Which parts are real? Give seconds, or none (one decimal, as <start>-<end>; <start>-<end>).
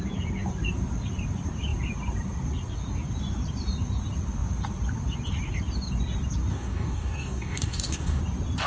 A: 0.0-6.5; 8.2-8.7